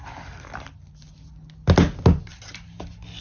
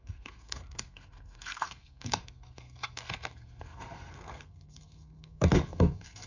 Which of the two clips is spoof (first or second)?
second